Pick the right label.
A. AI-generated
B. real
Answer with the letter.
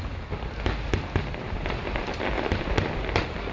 B